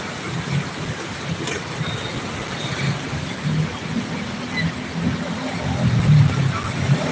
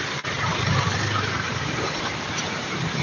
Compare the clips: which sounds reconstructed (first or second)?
second